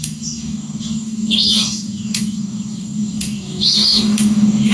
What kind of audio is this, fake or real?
fake